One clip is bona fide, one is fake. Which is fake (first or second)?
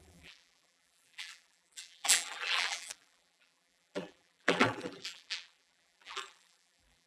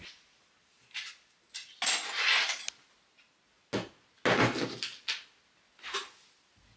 first